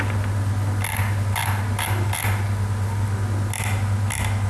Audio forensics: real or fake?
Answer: real